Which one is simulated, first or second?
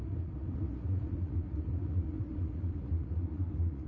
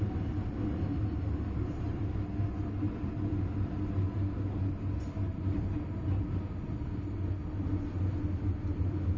first